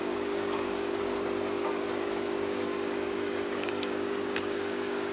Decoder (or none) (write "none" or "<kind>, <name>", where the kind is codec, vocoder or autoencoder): codec, DAC